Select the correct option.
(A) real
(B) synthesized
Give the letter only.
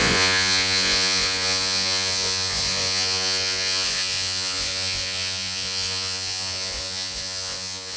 B